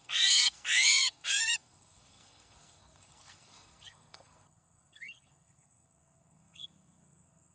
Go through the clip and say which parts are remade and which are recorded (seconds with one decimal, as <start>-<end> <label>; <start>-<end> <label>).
0.0-7.5 remade